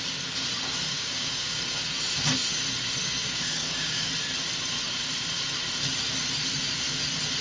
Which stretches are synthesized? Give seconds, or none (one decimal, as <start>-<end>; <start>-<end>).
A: 0.9-1.6; 3.2-4.1